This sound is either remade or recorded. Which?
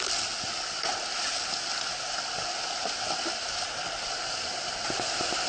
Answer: recorded